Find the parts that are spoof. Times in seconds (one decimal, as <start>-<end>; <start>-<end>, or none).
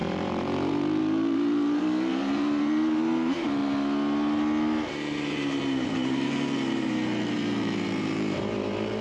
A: 0.0-3.6; 4.9-9.0